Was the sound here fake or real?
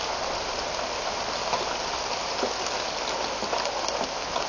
real